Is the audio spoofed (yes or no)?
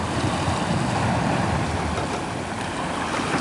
no